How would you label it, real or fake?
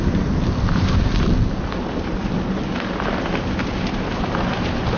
real